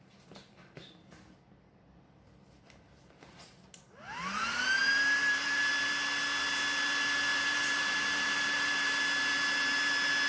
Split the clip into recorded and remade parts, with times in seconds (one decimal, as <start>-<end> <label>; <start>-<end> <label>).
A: 0.0-4.8 recorded; 4.8-5.9 remade; 5.9-7.3 recorded; 7.3-9.0 remade; 9.0-10.3 recorded